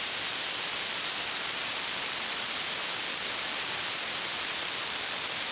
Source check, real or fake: fake